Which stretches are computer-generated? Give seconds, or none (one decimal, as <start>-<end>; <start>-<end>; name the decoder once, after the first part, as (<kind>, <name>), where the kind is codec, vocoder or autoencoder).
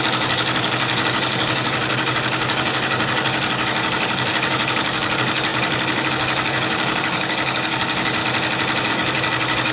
0.0-8.2 (codec, DAC); 8.9-9.7